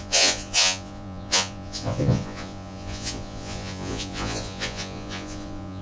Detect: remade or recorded remade